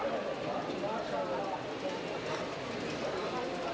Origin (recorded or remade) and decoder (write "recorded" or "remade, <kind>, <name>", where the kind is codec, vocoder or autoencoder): recorded